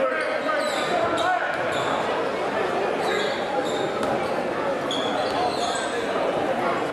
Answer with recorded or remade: recorded